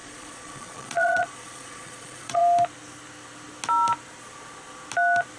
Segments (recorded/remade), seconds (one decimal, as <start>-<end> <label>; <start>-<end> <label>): 0.0-2.4 remade; 2.4-5.4 recorded